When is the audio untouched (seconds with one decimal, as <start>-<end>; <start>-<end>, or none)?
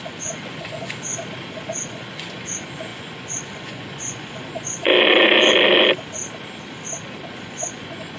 1.1-1.7; 4.9-7.3